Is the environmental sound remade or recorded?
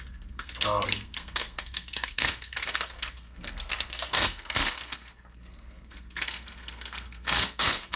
remade